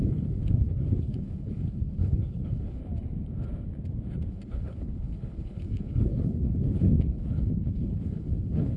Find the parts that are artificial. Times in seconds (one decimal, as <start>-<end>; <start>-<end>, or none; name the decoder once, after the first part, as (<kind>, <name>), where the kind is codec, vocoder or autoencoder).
0.0-2.8 (codec, HILCodec); 4.3-8.8